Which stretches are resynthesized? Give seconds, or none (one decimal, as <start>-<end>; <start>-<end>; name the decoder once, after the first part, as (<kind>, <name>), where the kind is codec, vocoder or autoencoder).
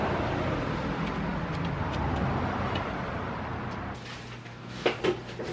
4.4-5.0 (codec, DAC)